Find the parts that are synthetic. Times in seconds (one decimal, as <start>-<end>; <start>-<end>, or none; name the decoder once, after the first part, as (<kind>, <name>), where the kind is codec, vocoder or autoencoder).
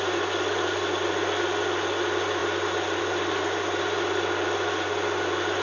none